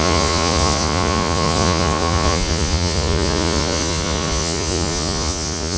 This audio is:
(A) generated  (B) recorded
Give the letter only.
A